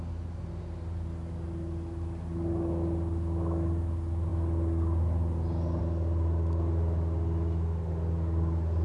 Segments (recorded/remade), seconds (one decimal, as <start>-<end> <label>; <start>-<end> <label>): 0.0-8.8 recorded